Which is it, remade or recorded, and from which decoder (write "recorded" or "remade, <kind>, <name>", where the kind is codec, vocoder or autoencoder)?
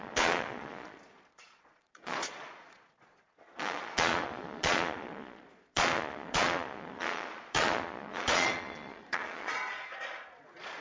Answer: remade, vocoder, Vocos